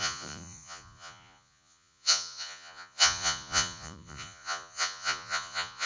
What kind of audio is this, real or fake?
fake